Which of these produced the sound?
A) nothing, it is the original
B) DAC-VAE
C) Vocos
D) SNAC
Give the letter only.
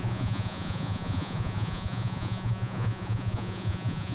C